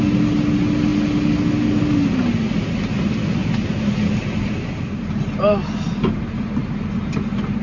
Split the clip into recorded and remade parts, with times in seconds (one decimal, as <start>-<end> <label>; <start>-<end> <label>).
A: 0.0-7.6 recorded